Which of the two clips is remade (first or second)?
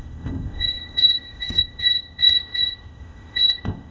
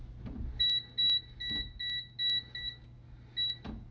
first